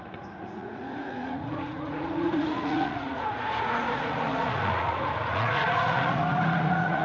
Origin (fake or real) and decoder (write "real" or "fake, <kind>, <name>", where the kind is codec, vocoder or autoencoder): fake, vocoder, Vocos